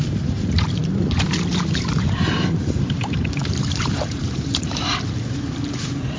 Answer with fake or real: fake